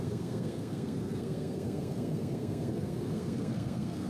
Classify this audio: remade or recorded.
remade